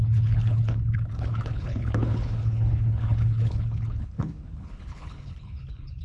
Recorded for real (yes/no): no